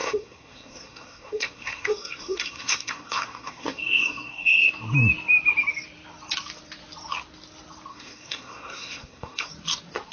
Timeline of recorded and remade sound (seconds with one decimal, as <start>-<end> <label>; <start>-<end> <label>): 0.0-4.7 remade; 4.7-7.9 recorded; 7.9-9.5 remade; 9.5-10.1 recorded